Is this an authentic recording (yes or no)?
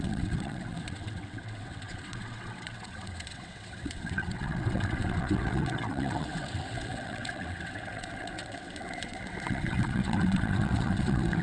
no